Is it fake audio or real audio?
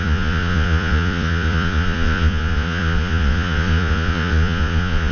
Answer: fake